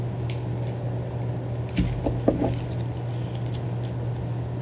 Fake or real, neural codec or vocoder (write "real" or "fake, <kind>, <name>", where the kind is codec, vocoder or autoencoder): real